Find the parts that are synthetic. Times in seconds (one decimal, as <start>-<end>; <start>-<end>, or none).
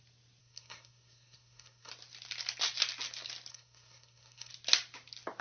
0.4-1.9; 3.5-4.5